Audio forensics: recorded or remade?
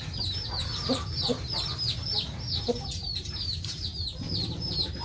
remade